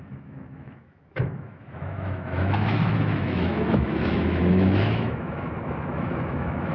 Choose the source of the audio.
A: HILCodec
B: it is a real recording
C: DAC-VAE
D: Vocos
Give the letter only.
C